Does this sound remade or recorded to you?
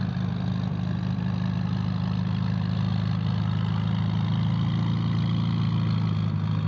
recorded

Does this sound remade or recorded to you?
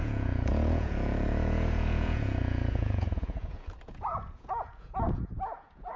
remade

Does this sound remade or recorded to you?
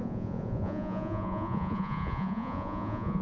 remade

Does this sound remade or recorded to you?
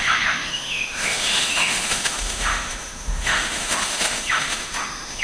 remade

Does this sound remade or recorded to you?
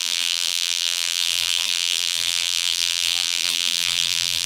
remade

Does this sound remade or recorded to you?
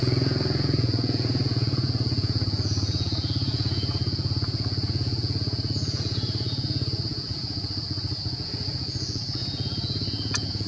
remade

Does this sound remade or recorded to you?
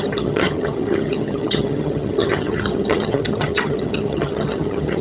remade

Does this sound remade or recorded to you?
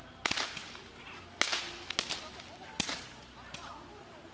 recorded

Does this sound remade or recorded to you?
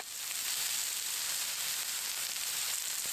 remade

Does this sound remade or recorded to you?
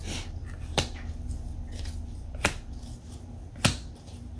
recorded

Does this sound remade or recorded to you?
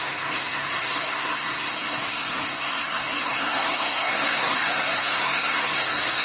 remade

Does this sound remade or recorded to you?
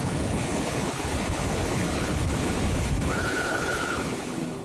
remade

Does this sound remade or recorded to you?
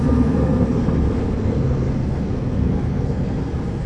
remade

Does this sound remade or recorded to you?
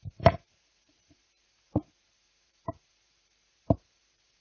remade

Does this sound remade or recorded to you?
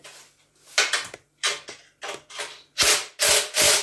recorded